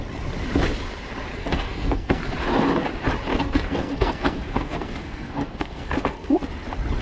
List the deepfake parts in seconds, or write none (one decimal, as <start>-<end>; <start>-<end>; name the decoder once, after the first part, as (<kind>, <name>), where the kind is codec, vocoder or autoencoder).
1.4-2.2 (codec, SNAC); 3.3-6.4